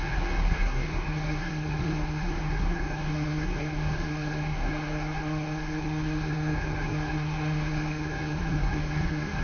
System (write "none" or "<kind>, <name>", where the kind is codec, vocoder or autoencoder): codec, SNAC